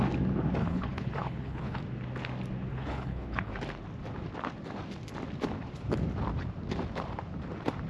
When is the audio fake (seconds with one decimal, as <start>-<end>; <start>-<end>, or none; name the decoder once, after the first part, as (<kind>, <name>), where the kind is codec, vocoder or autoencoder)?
0.6-1.8 (codec, HILCodec); 2.7-3.5